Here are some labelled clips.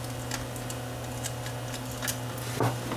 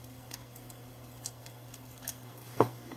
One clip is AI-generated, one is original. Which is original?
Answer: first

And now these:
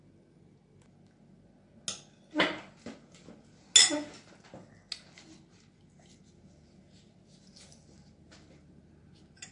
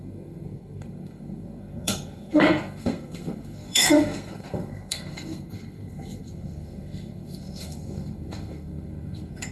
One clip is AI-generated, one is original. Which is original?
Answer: first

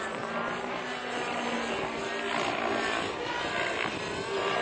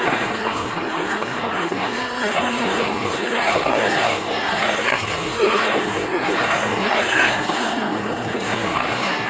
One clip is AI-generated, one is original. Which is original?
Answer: first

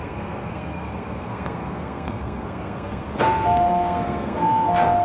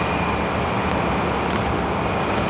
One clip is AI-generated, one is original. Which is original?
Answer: second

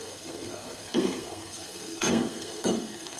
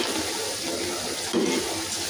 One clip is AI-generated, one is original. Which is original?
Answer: second